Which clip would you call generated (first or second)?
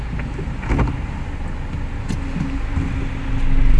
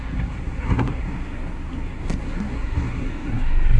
second